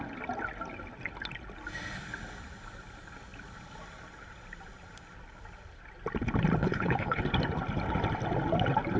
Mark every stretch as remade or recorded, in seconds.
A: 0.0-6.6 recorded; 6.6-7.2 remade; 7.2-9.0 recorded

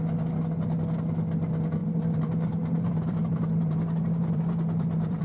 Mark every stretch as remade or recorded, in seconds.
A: 0.0-1.8 recorded; 1.8-5.2 remade

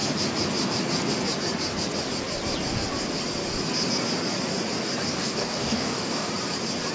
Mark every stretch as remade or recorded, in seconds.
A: 0.0-5.1 recorded; 5.1-6.3 remade; 6.3-6.9 recorded

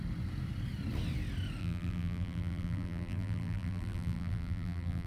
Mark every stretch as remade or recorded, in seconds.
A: 0.0-1.6 recorded; 1.6-5.1 remade